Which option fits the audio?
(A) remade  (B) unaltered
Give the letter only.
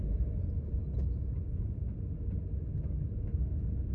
B